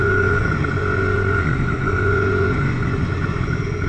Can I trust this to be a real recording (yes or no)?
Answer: no